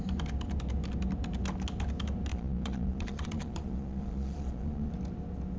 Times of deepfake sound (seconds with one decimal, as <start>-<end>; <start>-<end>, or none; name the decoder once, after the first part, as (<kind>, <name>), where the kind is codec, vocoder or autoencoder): 2.3-4.9 (vocoder, Vocos)